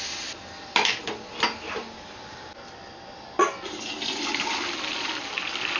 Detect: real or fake fake